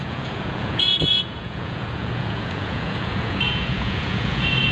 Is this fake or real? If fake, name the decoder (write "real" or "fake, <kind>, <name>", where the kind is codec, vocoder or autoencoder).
fake, vocoder, Vocos